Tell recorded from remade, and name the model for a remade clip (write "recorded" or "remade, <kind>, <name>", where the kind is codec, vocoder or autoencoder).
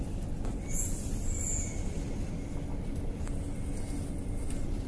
recorded